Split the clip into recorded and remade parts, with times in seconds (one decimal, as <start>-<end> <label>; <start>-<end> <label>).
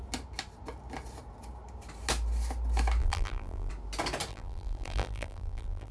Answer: 0.0-3.0 recorded; 3.0-3.7 remade; 3.7-4.3 recorded; 4.3-5.9 remade